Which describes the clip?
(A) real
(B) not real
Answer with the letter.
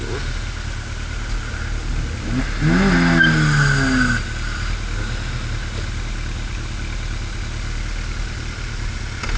A